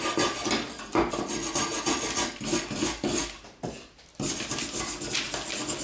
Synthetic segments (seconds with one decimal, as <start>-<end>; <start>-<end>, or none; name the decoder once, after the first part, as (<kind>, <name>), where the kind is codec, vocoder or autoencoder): none